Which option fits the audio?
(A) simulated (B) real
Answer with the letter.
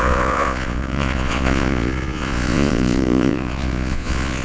A